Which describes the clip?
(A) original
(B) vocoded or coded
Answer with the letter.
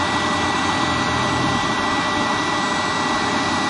A